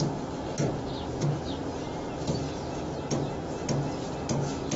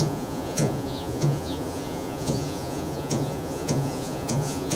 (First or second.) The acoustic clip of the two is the first